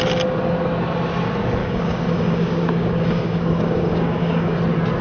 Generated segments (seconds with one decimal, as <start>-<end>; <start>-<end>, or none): 1.6-4.6